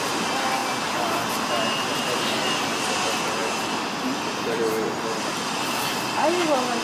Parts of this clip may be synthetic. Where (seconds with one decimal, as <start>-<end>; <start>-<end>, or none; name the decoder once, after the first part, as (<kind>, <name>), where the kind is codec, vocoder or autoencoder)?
none